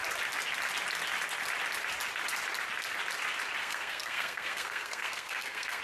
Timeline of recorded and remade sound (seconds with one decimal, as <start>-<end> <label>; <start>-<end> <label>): 0.0-3.6 recorded; 3.6-5.8 remade